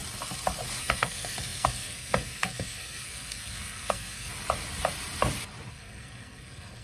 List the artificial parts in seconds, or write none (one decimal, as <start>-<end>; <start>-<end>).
0.8-4.3; 5.7-6.8